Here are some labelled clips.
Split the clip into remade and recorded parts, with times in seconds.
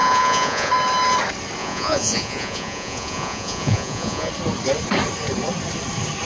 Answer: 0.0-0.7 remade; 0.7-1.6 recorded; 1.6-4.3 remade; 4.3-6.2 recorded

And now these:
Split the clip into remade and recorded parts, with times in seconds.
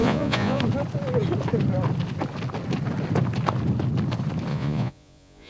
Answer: 0.0-0.6 remade; 0.6-4.5 recorded; 4.5-5.5 remade